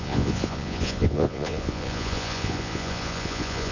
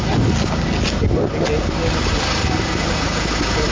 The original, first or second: second